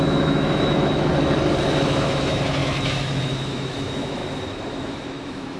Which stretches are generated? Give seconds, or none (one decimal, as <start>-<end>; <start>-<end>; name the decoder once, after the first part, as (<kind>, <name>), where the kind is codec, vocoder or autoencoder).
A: 0.0-1.1 (autoencoder, DAC-VAE); 1.9-4.2; 4.7-5.6